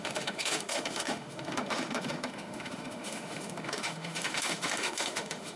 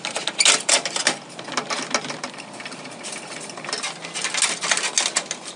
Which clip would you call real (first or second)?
second